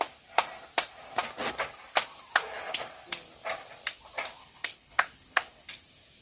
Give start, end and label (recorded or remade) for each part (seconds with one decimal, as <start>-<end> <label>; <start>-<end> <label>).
0.0-4.4 recorded; 4.4-5.7 remade; 5.7-6.2 recorded